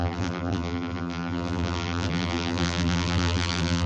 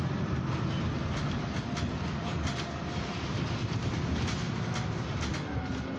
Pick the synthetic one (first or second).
first